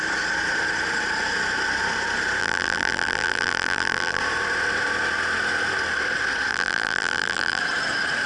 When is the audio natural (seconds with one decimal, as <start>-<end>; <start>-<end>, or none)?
0.0-2.4; 4.2-6.5; 7.6-8.3